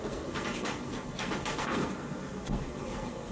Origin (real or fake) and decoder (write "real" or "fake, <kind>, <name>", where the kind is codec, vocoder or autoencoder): fake, codec, SNAC